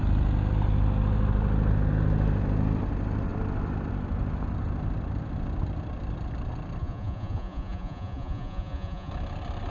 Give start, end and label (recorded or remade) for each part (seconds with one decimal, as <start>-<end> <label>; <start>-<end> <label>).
0.0-6.8 recorded; 6.8-9.1 remade; 9.1-9.7 recorded